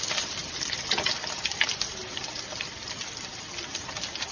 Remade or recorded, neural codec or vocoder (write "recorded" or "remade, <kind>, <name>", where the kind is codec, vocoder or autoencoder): remade, vocoder, BigVGAN v2